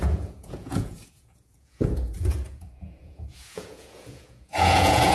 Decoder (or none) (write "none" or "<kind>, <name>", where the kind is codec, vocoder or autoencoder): vocoder, Vocos